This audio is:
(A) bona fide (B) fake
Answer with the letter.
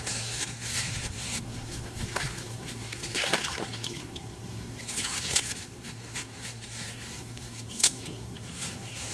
B